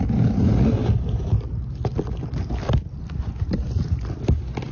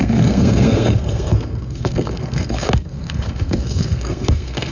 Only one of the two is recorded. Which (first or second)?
first